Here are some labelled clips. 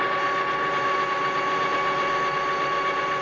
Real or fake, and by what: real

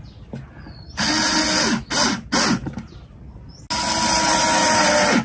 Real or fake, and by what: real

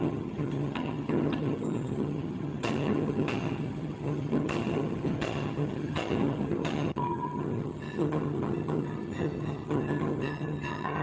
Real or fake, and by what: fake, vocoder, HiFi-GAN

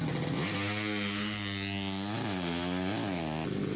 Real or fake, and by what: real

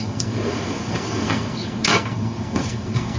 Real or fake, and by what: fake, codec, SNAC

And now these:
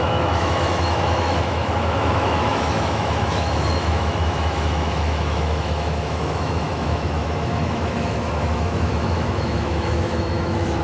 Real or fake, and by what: fake, autoencoder, DAC-VAE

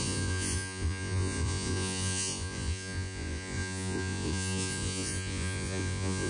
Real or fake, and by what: fake, vocoder, Vocos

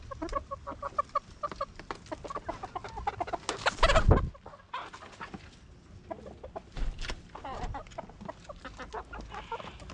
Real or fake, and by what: real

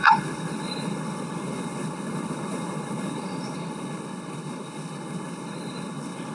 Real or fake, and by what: fake, codec, HILCodec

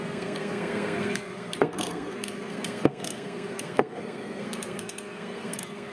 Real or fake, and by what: fake, codec, SNAC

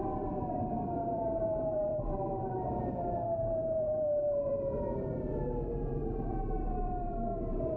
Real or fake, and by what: fake, vocoder, BigVGAN v2